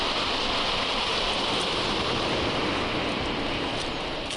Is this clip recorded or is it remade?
recorded